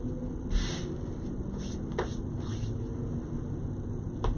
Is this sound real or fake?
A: real